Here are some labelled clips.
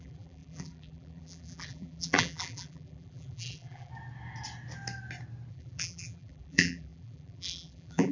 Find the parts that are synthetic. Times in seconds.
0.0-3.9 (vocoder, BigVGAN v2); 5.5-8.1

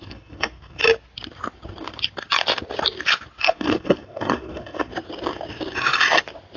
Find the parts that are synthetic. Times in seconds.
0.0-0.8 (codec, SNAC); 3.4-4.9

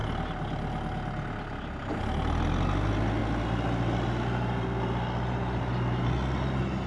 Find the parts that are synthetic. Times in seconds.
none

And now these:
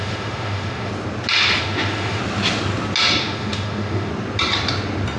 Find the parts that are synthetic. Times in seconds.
0.0-0.9 (autoencoder, DAC-VAE); 1.6-2.2; 3.2-4.1

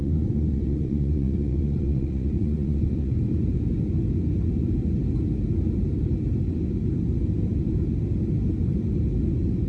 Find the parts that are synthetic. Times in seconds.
0.0-3.2 (vocoder, Vocos)

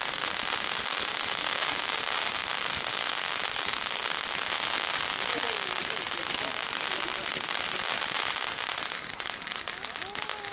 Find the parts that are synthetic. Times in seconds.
none

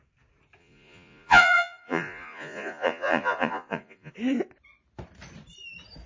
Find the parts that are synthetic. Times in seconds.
0.6-4.1 (vocoder, Vocos)